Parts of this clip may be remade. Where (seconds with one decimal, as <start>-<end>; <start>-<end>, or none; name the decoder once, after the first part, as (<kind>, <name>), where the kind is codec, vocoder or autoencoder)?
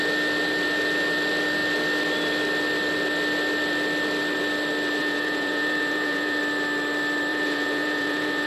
5.0-6.4 (vocoder, Vocos); 7.3-8.5